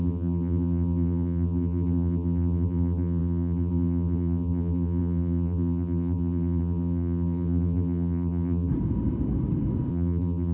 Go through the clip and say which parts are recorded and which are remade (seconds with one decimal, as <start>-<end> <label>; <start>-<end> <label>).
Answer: 0.0-8.7 remade; 8.7-9.9 recorded; 9.9-10.5 remade